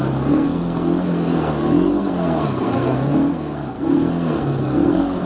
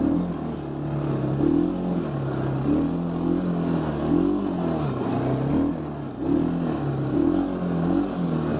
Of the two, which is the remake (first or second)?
first